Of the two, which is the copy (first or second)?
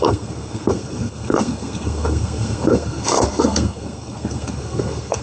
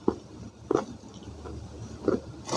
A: first